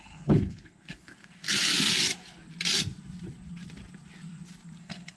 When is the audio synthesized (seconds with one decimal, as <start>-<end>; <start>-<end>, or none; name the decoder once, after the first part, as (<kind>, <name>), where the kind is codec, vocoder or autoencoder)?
0.0-1.7 (codec, SNAC); 4.8-5.2